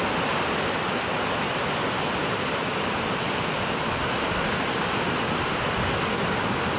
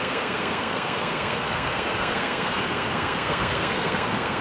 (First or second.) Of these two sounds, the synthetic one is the second